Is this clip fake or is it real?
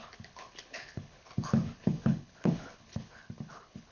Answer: fake